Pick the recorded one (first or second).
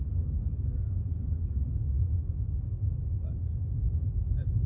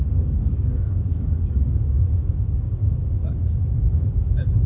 first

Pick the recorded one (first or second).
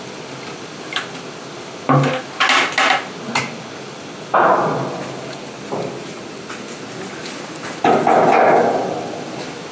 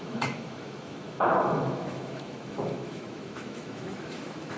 first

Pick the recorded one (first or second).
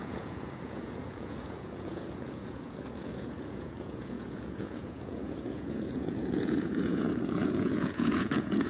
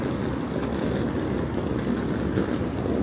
second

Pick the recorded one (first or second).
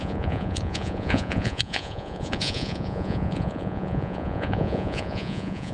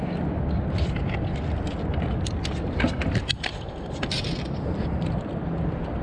second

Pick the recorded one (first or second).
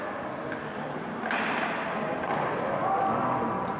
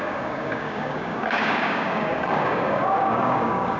first